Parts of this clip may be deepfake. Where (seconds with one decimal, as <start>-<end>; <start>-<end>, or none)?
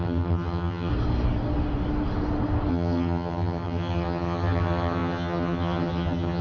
0.0-0.9; 2.7-6.4